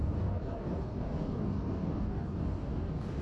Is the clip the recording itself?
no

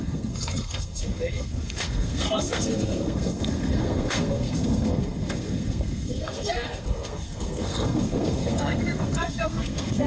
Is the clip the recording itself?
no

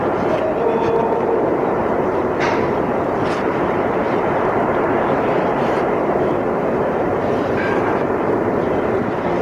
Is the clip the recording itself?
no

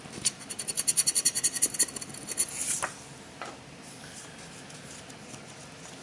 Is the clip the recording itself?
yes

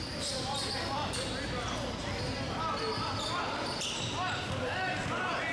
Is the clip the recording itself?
yes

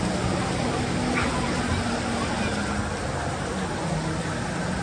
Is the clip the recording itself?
yes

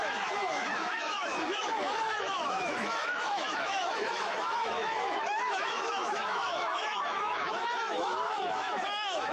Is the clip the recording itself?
no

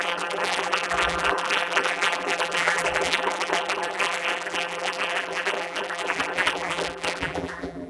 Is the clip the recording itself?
no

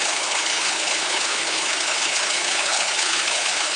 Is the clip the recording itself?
no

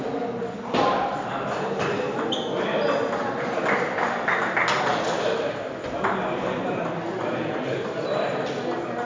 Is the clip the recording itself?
yes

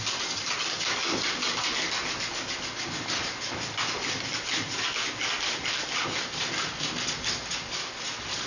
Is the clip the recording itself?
yes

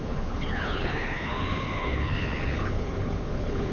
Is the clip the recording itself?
no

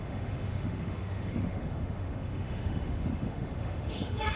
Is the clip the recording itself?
no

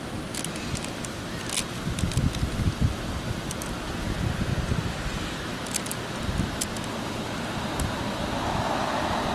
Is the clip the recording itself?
yes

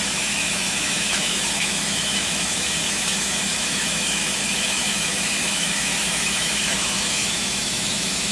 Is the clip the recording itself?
no